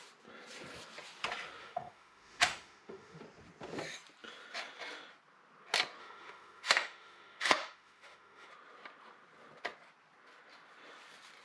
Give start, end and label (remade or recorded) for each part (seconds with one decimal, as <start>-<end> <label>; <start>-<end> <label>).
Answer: 0.0-1.6 recorded; 1.6-3.2 remade; 3.2-6.0 recorded; 6.0-8.5 remade; 8.5-11.4 recorded